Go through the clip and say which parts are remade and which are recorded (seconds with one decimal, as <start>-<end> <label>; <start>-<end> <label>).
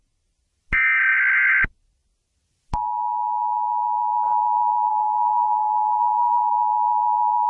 0.0-4.9 recorded; 4.9-6.5 remade; 6.5-7.5 recorded